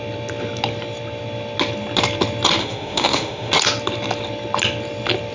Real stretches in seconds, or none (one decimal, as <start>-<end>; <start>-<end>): 0.0-2.6; 3.5-5.3